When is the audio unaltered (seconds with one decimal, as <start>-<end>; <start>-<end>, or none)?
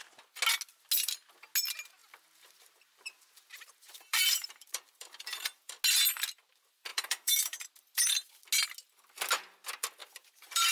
0.0-2.0; 5.8-6.9; 7.7-10.0